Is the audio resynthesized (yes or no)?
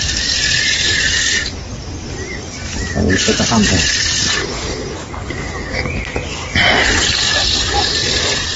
no